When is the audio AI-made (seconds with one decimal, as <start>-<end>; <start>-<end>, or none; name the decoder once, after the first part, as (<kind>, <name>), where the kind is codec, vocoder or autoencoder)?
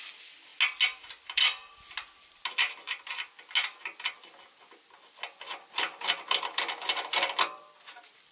none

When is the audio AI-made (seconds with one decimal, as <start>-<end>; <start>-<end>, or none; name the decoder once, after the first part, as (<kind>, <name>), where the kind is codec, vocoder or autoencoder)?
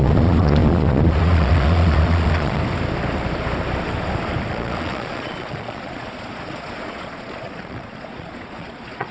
0.0-2.6 (vocoder, Vocos); 4.5-9.1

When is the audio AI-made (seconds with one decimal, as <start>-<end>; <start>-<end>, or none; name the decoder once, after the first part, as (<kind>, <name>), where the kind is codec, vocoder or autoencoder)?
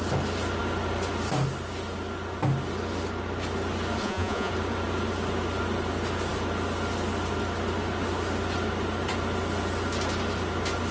4.0-4.5 (vocoder, Vocos)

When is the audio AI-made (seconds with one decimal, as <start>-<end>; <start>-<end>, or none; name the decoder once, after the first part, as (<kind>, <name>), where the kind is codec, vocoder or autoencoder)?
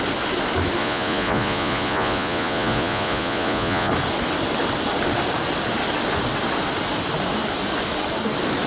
0.8-3.9 (vocoder, Vocos)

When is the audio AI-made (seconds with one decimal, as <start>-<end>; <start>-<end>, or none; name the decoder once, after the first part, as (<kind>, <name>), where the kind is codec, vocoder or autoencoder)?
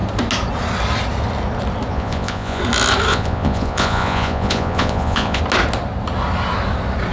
1.9-2.6 (vocoder, Vocos); 3.1-5.4